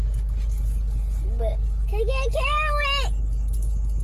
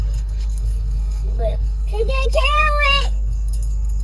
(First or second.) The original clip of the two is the first